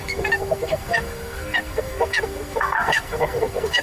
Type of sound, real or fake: fake